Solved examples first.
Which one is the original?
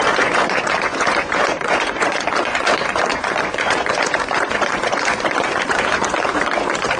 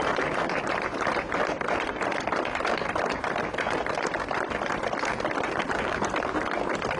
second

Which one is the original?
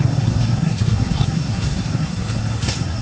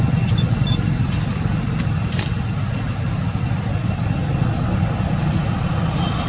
second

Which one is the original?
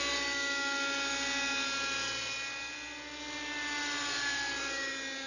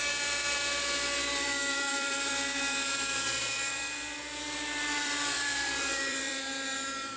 first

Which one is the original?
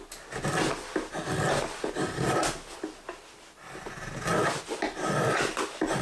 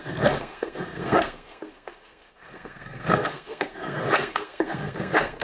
first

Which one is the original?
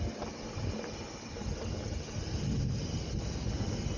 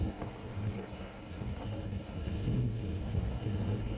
first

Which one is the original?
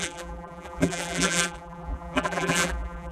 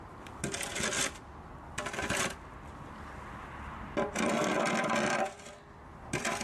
second